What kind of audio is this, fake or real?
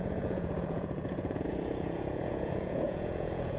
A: fake